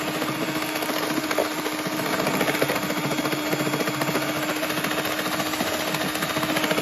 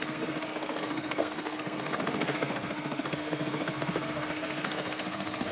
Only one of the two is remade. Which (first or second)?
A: second